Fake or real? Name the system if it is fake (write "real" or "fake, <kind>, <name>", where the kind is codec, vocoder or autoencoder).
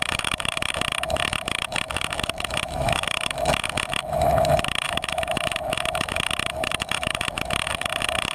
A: fake, autoencoder, DAC-VAE